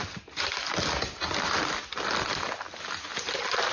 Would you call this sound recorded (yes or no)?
yes